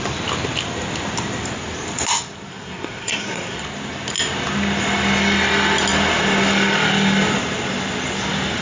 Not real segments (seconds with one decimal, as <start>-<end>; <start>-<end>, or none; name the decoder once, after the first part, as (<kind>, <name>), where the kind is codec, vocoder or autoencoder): 2.5-3.6 (codec, SNAC)